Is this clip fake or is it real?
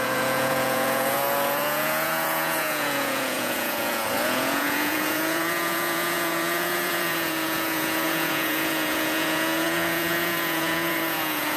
fake